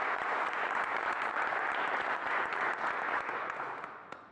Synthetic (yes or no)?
yes